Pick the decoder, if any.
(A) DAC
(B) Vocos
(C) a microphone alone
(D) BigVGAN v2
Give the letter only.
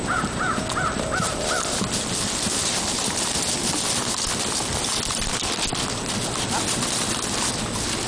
C